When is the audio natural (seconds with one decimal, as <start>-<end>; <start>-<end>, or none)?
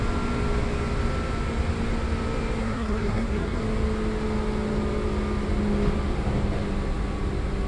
0.0-2.6; 3.6-7.7